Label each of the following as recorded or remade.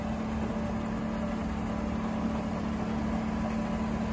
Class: recorded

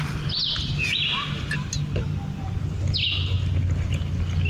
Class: recorded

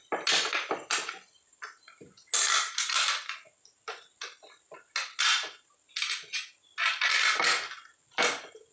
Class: recorded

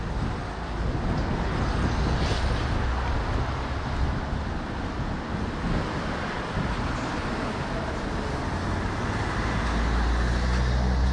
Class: recorded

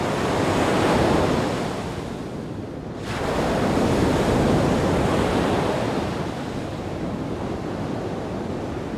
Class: recorded